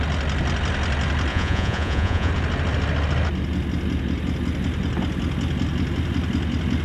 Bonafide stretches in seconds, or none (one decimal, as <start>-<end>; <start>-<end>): 0.0-1.3; 2.3-6.8